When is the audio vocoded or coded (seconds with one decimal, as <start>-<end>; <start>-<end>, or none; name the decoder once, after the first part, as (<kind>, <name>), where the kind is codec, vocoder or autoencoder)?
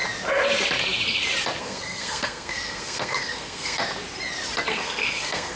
1.6-3.8 (codec, SNAC); 4.7-5.6